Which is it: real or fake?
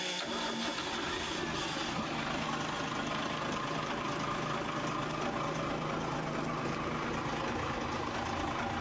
real